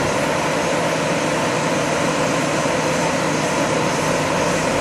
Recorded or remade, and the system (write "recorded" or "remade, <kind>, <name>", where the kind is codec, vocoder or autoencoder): remade, vocoder, BigVGAN v2